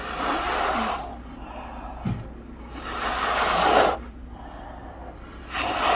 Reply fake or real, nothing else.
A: real